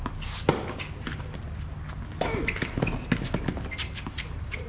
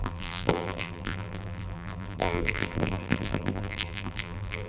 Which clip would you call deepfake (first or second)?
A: second